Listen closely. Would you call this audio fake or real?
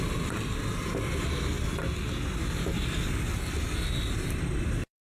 real